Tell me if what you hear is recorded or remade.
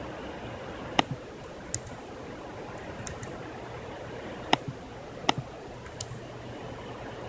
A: recorded